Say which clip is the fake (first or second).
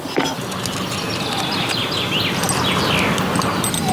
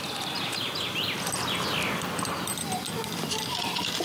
second